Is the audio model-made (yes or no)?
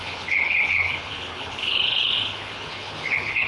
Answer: yes